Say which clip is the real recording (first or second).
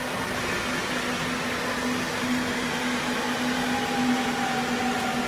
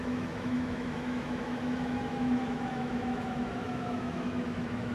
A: first